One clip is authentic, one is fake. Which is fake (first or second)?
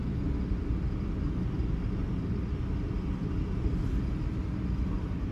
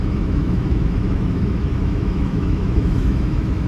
second